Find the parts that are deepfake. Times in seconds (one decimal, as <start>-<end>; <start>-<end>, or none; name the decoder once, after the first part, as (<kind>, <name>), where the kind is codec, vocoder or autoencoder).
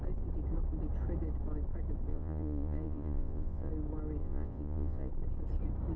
2.1-3.7 (vocoder, Vocos); 4.2-5.1